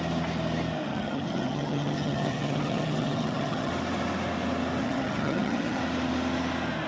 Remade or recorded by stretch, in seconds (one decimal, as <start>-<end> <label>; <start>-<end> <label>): 0.0-0.9 recorded; 0.9-3.7 remade; 3.7-4.8 recorded; 4.8-5.8 remade; 5.8-6.9 recorded